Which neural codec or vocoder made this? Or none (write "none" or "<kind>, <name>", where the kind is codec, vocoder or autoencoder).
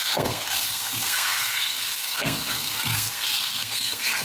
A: codec, SNAC